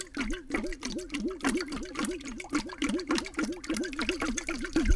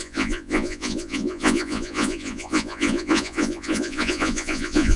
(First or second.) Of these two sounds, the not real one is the second